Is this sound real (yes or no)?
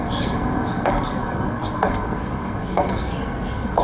no